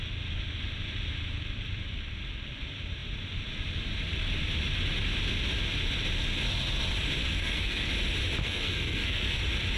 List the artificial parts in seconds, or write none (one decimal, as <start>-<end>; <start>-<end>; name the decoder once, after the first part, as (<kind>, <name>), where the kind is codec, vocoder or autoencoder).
7.2-7.9 (codec, SNAC); 8.4-9.4